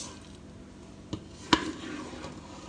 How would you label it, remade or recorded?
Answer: recorded